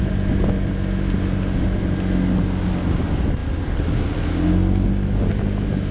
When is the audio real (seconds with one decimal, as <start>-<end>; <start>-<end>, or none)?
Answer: 0.0-3.4; 4.1-5.9